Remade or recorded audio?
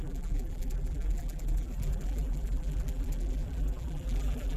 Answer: remade